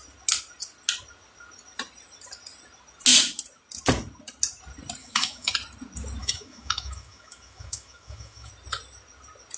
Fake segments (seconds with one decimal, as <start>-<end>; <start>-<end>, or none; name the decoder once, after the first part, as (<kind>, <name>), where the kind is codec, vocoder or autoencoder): 5.0-5.5 (autoencoder, DAC-VAE); 6.2-8.5